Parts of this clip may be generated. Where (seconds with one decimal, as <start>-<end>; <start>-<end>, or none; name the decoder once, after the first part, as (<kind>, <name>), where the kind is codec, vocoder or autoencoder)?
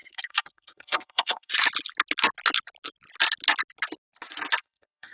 0.0-1.5 (codec, SNAC); 4.6-5.1